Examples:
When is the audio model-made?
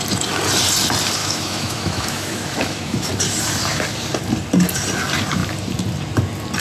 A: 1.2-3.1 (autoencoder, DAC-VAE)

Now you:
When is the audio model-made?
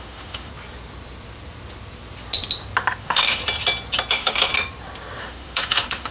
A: 0.0-0.5 (autoencoder, DAC-VAE); 3.0-3.4; 4.1-4.5; 5.2-6.1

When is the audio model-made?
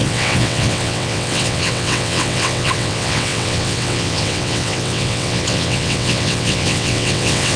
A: 0.0-7.6 (vocoder, WaveNeXt)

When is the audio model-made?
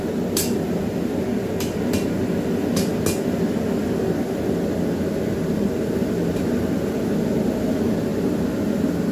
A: none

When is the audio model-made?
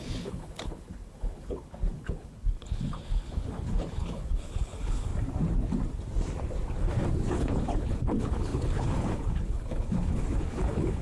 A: 0.0-5.1 (codec, HILCodec); 7.3-11.0